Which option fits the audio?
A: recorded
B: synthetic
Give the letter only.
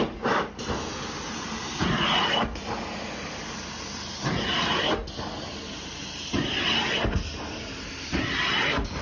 A